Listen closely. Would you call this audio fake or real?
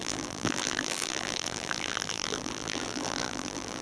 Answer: fake